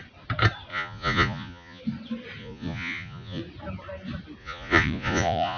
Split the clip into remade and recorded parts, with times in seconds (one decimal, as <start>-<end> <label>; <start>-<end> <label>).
0.0-0.7 recorded; 0.7-1.8 remade; 1.8-2.4 recorded; 2.4-3.4 remade; 3.4-4.4 recorded; 4.4-5.6 remade